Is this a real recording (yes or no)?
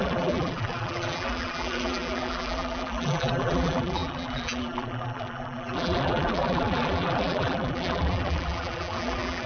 no